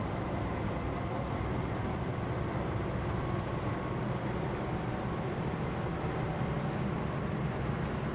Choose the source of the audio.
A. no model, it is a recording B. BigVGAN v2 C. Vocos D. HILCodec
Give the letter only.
A